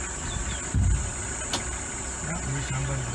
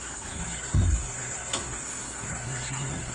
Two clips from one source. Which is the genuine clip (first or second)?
first